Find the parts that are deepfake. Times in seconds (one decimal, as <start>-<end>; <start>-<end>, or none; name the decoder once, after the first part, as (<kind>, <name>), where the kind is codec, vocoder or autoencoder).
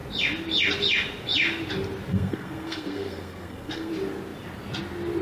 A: 2.1-3.9 (codec, SNAC)